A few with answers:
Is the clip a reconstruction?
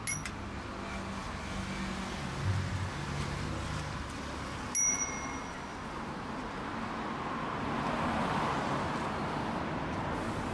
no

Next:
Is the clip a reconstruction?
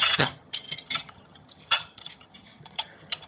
yes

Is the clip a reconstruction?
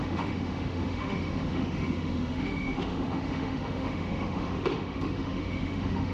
yes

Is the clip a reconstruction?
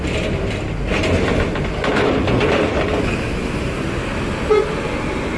no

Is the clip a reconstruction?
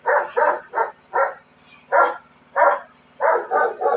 no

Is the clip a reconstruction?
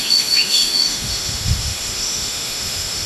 yes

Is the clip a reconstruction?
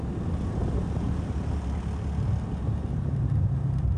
no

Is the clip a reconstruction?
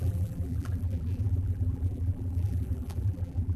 yes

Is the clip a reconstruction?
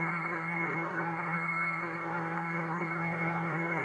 yes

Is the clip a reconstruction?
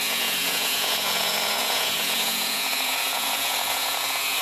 yes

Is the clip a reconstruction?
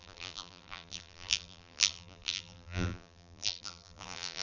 yes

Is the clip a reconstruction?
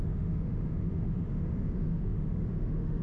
yes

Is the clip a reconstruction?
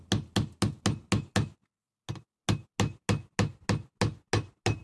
no